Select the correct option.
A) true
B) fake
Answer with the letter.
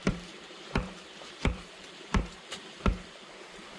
B